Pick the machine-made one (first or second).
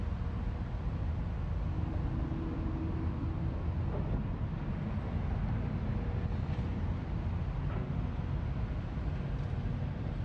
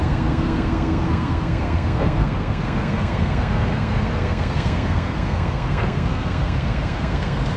second